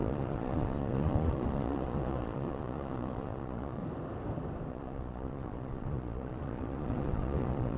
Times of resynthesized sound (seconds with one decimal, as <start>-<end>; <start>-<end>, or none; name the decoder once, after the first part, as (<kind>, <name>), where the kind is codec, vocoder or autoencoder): 0.0-3.8 (vocoder, Vocos); 4.7-7.8